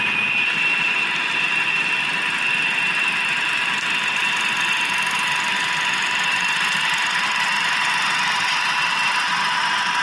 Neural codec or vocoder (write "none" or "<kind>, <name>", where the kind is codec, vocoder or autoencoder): vocoder, BigVGAN v2